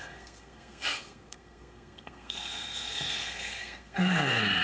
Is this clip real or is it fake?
fake